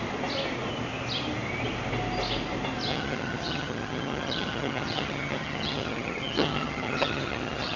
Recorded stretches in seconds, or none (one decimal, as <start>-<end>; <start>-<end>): 0.0-2.9